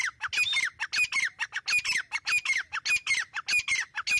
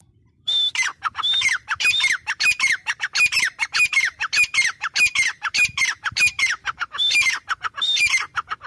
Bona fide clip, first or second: first